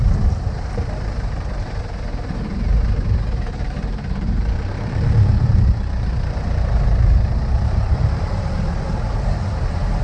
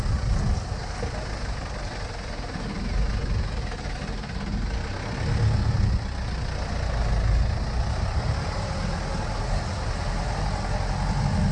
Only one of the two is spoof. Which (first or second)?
first